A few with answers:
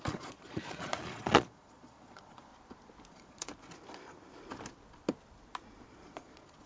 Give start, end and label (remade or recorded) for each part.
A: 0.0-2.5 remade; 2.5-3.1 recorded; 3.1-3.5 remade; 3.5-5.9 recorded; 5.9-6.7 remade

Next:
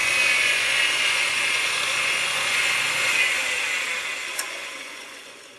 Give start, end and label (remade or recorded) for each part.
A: 0.0-3.4 remade; 3.4-4.2 recorded; 4.2-5.6 remade

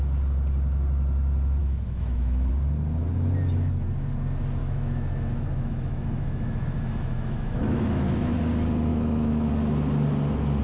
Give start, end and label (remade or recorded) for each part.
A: 0.0-1.6 recorded; 1.6-2.5 remade; 2.5-4.6 recorded; 4.6-8.4 remade; 8.4-8.9 recorded; 8.9-9.5 remade; 9.5-10.6 recorded

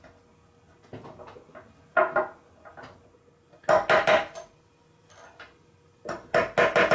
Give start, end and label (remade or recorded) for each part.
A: 0.0-6.9 recorded

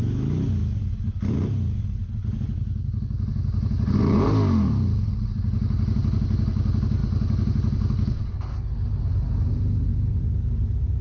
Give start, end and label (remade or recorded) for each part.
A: 0.0-11.0 recorded

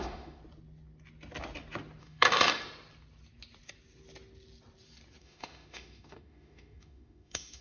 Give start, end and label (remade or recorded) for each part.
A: 0.0-0.4 remade; 0.4-2.0 recorded; 2.0-2.6 remade; 2.6-5.2 recorded; 5.2-7.6 remade

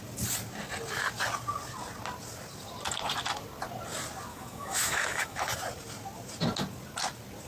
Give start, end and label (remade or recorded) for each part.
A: 0.0-4.3 recorded; 4.3-5.5 remade; 5.5-7.5 recorded